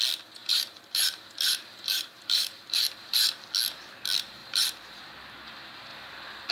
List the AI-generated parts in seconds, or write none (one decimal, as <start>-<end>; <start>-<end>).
0.4-3.5; 4.4-5.0